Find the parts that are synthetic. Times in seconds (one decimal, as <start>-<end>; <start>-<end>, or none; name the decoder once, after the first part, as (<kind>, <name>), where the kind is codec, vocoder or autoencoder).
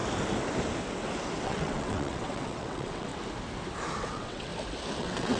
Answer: 1.4-3.1 (vocoder, WaveNeXt); 4.0-4.5; 5.0-5.4